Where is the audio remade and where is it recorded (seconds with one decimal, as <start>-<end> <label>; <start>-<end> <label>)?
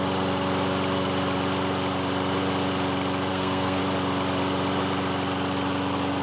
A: 0.0-3.3 recorded; 3.3-3.8 remade; 3.8-6.2 recorded